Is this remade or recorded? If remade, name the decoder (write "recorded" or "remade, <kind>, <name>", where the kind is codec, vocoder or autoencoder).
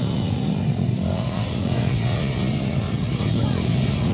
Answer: remade, vocoder, Vocos